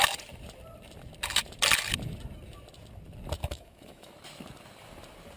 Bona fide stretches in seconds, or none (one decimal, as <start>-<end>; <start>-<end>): 0.0-3.4; 4.1-5.4